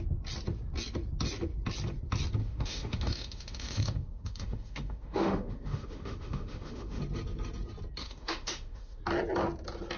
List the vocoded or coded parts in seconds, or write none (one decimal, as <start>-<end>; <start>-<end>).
2.4-7.0; 8.0-9.0

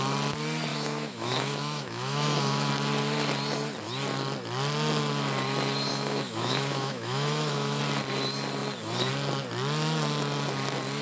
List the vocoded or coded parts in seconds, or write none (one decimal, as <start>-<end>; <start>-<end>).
0.7-2.7; 5.9-7.8

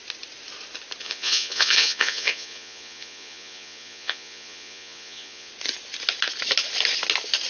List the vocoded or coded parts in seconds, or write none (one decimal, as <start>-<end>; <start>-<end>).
1.0-5.5

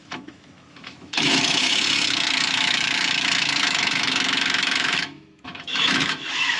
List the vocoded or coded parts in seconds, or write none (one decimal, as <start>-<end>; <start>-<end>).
0.0-6.6

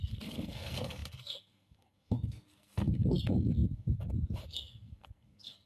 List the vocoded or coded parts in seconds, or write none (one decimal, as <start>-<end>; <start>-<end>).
0.0-5.7

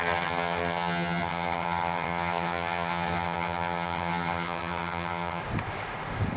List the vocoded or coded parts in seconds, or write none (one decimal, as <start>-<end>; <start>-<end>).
0.0-5.4